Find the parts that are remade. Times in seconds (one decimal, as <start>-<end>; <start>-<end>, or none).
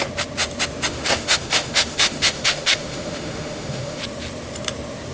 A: 0.9-4.0